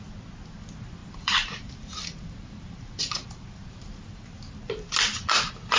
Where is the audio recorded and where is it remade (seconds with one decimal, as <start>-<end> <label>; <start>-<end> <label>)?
0.0-1.0 recorded; 1.0-4.5 remade; 4.5-5.8 recorded